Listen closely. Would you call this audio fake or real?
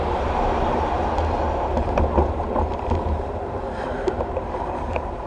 fake